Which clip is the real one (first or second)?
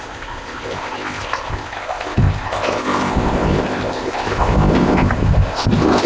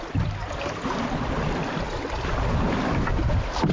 second